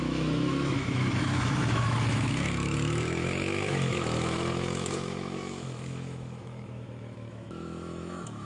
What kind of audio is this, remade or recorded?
remade